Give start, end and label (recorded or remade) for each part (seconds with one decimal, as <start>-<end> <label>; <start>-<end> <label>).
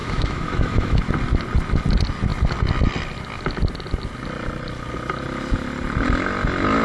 0.0-1.1 remade; 1.1-6.8 recorded